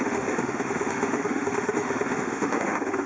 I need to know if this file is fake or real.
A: fake